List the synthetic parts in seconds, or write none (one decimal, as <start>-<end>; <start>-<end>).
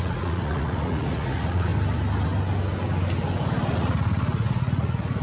0.0-1.7; 3.7-5.2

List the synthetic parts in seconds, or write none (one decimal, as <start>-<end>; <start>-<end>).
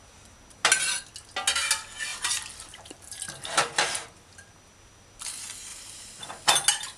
2.1-4.5; 5.7-6.3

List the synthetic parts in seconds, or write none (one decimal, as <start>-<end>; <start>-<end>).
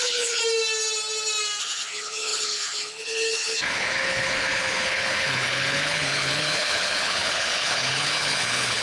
0.0-0.4; 1.6-8.8